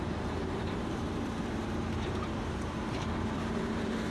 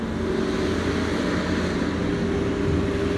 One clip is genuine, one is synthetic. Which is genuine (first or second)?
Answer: second